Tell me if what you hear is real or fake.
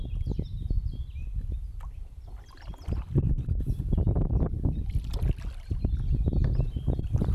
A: real